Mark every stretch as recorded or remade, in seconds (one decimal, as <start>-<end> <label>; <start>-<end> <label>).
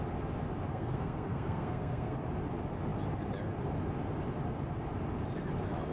0.0-0.7 recorded; 0.7-2.2 remade; 2.2-5.9 recorded